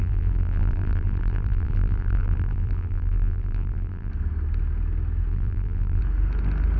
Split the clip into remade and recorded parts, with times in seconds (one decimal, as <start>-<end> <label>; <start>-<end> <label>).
0.0-4.1 remade; 4.1-5.3 recorded; 5.3-6.0 remade; 6.0-6.8 recorded